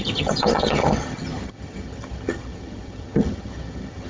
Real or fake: fake